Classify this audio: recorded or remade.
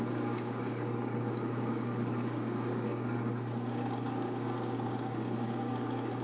remade